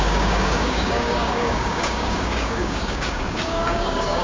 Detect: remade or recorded remade